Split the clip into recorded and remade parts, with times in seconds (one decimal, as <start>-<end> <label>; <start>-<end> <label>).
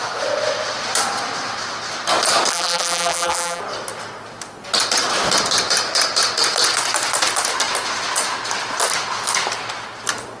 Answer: 0.0-2.5 recorded; 2.5-3.6 remade; 3.6-10.4 recorded